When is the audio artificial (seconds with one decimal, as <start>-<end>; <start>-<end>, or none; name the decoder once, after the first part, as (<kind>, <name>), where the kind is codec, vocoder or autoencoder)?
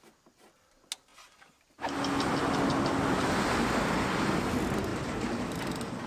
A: 4.9-5.6 (vocoder, BigVGAN v2)